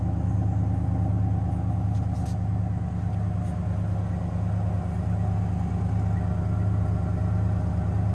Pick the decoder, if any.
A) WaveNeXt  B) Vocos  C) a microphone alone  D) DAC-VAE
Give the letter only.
C